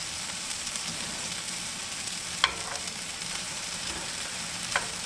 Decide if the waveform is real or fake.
fake